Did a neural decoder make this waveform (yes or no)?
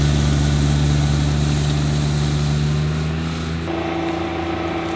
no